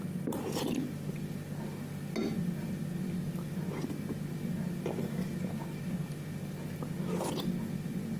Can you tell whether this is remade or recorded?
recorded